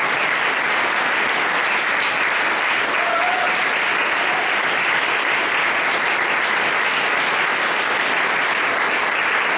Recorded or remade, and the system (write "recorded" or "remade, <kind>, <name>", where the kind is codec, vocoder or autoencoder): recorded